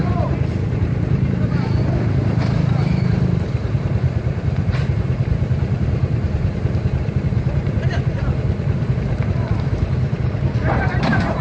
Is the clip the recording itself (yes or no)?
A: no